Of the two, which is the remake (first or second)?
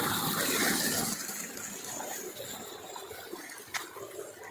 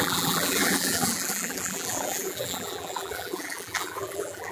second